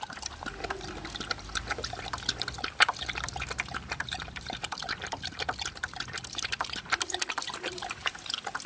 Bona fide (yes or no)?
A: yes